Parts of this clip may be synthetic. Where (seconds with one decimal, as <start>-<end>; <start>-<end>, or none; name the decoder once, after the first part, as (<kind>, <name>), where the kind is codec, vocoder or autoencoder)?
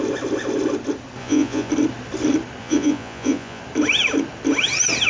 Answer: 1.2-1.7 (vocoder, Vocos); 2.6-3.6